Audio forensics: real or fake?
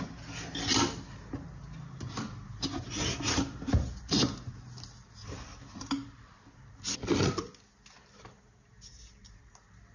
real